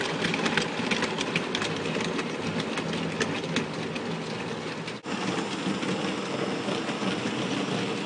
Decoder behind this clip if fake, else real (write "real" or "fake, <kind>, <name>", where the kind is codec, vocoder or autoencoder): real